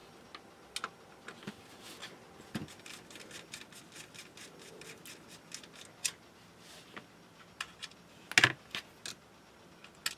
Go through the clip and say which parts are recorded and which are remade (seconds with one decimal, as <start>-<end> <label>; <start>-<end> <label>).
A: 0.0-10.2 recorded